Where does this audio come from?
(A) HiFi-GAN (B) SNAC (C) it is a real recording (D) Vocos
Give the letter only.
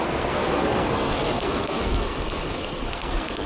B